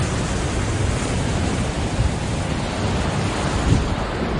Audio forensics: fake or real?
real